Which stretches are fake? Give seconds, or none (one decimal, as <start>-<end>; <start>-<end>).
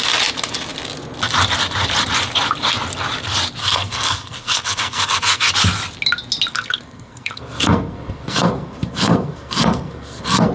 3.6-5.5; 6.5-10.5